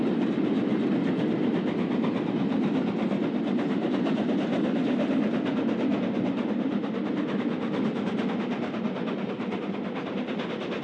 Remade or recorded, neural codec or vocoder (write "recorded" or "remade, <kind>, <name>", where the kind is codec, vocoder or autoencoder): recorded